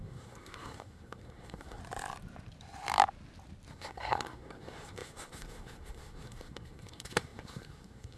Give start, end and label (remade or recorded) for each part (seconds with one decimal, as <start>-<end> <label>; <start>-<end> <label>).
0.0-1.8 remade; 1.8-3.7 recorded; 3.7-8.2 remade